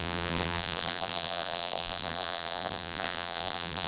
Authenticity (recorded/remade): remade